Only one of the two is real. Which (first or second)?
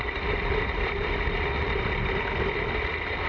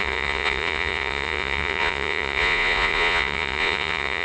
first